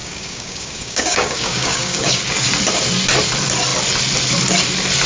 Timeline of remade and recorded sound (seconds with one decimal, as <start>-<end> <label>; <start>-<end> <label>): 0.0-2.2 remade; 2.2-5.1 recorded